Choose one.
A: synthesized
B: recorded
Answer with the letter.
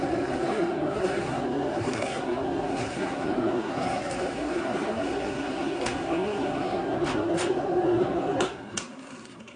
A